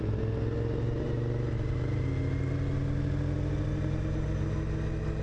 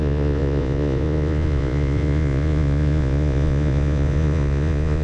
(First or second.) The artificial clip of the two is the second